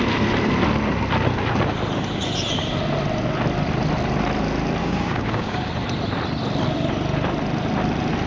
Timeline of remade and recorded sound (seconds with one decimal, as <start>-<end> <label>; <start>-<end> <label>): 0.0-4.8 recorded; 4.8-5.7 remade; 5.7-8.3 recorded